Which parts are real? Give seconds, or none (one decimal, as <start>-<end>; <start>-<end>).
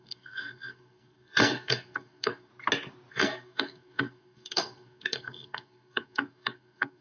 2.5-3.1